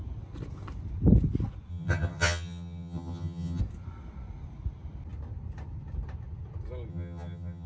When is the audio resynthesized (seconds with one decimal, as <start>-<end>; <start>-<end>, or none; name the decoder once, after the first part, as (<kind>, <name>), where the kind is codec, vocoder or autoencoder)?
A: 1.7-3.6 (vocoder, HiFi-GAN); 6.9-7.7